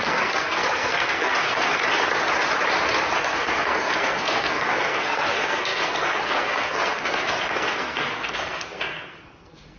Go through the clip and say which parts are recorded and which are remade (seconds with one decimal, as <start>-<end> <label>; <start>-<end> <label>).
0.0-1.8 remade; 1.8-3.2 recorded; 3.2-9.8 remade